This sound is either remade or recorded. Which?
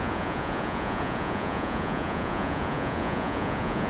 remade